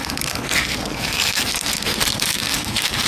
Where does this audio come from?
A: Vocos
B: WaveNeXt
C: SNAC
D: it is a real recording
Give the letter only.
C